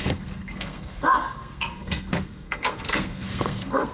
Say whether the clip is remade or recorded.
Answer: remade